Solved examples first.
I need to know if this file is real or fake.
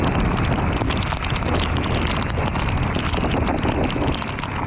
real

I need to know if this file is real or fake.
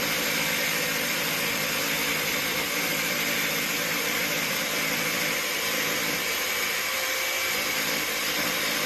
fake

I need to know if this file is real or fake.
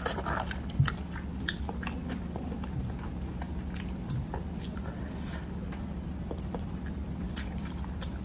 fake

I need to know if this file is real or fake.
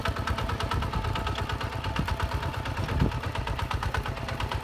real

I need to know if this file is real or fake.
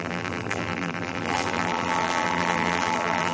fake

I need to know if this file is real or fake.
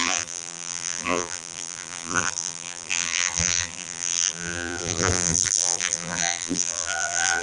fake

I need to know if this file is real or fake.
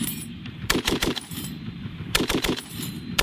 fake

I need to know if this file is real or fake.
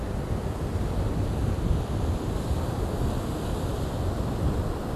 fake